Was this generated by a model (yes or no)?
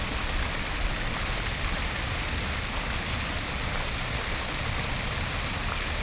no